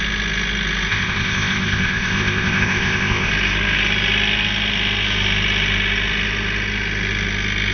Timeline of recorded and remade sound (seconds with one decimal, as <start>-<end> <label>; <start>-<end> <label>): 0.0-0.9 recorded; 0.9-3.3 remade; 3.3-7.7 recorded